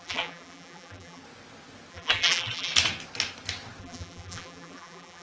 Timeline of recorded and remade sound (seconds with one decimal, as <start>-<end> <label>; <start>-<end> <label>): 0.0-1.2 remade; 1.2-1.9 recorded; 1.9-2.7 remade; 2.7-3.8 recorded; 3.8-5.2 remade